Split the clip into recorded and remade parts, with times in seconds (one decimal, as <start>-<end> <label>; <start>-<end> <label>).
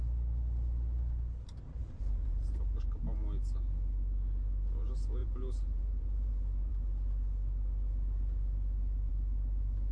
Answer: 0.0-1.8 recorded; 1.8-3.0 remade; 3.0-5.2 recorded; 5.2-6.3 remade; 6.3-9.9 recorded